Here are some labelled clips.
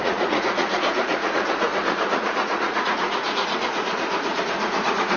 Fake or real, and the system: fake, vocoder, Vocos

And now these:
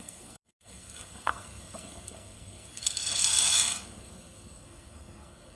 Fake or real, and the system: fake, codec, SNAC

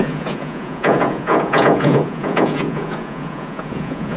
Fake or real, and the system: fake, vocoder, Vocos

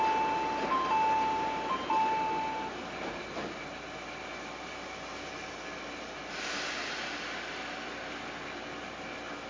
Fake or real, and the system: real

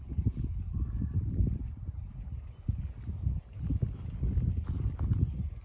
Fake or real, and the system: real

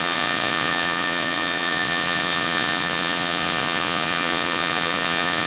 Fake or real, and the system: fake, vocoder, Vocos